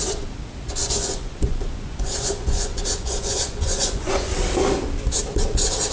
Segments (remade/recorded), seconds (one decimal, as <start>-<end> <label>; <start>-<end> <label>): 0.0-0.8 recorded; 0.8-4.3 remade; 4.3-5.9 recorded